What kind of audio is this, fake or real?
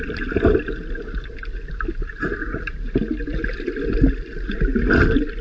real